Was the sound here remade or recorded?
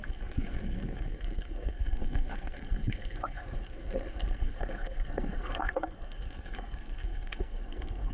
remade